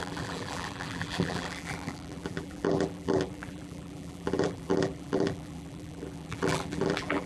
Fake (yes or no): yes